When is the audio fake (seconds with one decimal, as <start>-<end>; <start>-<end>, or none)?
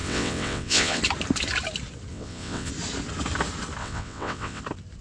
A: 0.0-1.0; 2.1-2.7; 3.8-4.6